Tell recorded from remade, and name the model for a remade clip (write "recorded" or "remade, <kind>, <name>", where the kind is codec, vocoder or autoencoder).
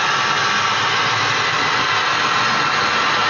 recorded